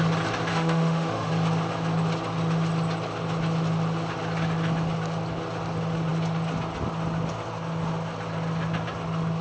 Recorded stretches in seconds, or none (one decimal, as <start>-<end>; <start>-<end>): 0.0-0.5; 1.3-9.4